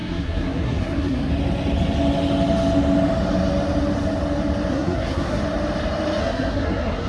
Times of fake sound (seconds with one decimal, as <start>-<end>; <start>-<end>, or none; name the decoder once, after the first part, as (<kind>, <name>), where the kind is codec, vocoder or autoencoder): 0.0-1.3 (codec, SNAC); 4.7-5.4; 6.2-7.1